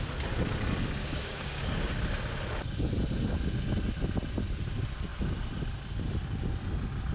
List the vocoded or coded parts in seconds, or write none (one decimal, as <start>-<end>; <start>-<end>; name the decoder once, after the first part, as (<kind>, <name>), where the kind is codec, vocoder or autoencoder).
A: 1.0-1.9 (codec, DAC)